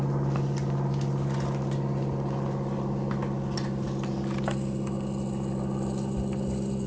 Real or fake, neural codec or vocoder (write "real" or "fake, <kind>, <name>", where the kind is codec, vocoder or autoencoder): real